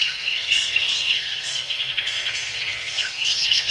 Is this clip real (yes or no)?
no